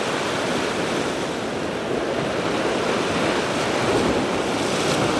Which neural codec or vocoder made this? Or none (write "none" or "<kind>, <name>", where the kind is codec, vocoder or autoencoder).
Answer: none